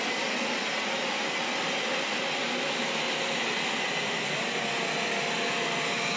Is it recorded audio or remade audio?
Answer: recorded